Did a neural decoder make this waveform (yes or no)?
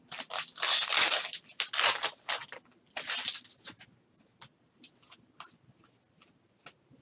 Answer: no